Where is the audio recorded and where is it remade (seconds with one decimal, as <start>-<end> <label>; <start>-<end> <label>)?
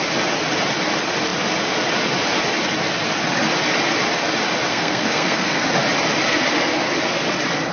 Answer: 0.0-4.7 recorded; 4.7-5.6 remade; 5.6-7.7 recorded